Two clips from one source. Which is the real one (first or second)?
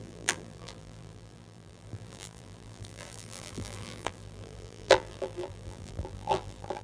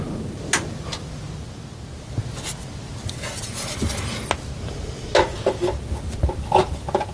second